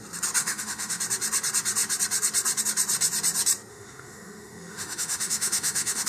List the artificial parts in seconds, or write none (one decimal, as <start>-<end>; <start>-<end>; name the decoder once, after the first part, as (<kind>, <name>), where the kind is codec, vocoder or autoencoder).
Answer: 0.4-1.0 (autoencoder, DAC-VAE); 3.7-6.1